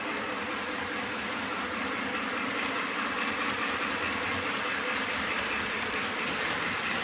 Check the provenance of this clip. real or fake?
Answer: fake